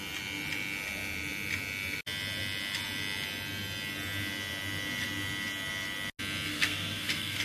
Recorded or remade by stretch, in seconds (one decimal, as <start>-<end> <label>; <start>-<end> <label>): 0.0-6.5 recorded; 6.5-7.4 remade